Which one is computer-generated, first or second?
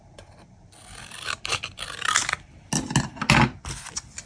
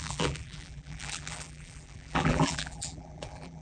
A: second